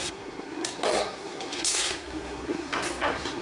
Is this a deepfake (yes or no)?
yes